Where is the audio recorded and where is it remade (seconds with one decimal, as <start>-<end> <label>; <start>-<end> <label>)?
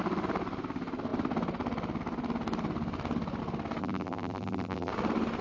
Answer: 0.0-3.8 recorded; 3.8-4.9 remade; 4.9-5.4 recorded